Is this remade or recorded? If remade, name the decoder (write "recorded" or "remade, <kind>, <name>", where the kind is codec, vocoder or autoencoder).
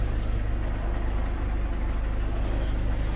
recorded